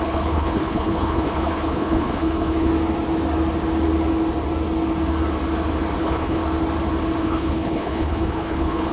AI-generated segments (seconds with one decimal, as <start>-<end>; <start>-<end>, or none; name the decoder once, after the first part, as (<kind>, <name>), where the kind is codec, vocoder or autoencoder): 0.0-2.7 (codec, HILCodec); 6.0-6.4; 7.2-8.9